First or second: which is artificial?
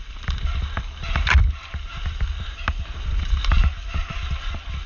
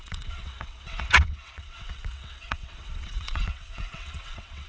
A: second